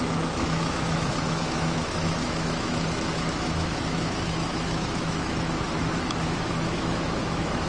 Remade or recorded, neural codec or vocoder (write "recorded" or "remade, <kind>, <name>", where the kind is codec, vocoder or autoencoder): remade, autoencoder, DAC-VAE